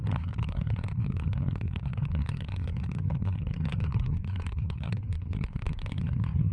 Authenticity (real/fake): fake